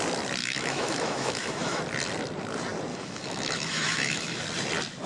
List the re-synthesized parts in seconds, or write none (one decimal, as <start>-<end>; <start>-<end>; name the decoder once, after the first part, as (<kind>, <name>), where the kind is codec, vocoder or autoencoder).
0.4-1.8 (autoencoder, DAC-VAE); 2.9-4.4